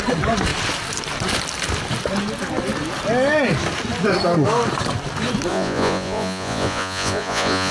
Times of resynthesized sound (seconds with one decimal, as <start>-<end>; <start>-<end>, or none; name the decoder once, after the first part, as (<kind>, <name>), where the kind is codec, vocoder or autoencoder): 5.5-7.7 (vocoder, Vocos)